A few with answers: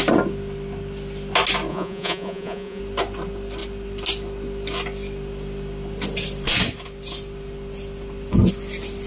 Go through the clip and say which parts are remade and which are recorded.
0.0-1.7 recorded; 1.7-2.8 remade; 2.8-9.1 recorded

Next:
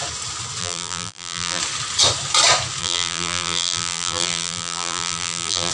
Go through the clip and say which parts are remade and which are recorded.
0.0-0.6 recorded; 0.6-1.6 remade; 1.6-2.8 recorded; 2.8-5.7 remade

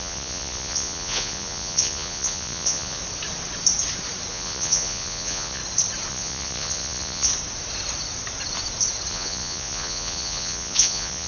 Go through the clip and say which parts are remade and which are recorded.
0.0-3.0 remade; 3.0-4.3 recorded; 4.3-5.6 remade; 5.6-6.1 recorded; 6.1-7.3 remade; 7.3-9.1 recorded; 9.1-11.3 remade

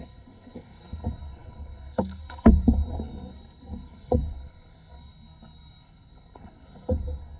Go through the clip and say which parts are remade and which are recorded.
0.0-7.4 remade